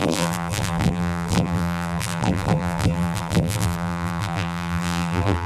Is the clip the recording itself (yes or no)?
no